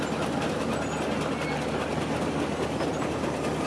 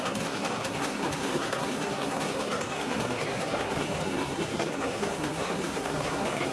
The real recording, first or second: first